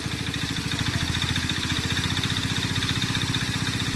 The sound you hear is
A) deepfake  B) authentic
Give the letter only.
B